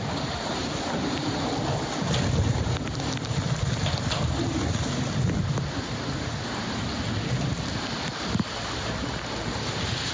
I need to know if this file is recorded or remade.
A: recorded